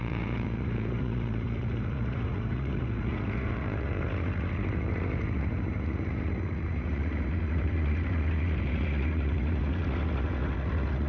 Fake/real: fake